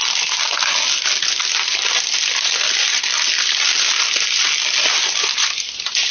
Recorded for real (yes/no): yes